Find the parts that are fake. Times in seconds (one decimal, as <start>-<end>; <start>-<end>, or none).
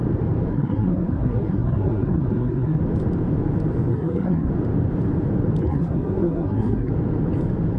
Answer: 0.5-2.8; 3.9-4.5; 5.6-6.9